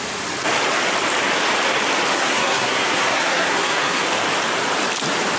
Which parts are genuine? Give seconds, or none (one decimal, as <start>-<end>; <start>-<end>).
0.0-2.1; 4.0-5.4